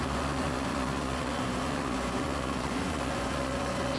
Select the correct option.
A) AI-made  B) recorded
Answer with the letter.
A